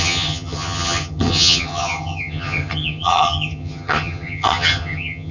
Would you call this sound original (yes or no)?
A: no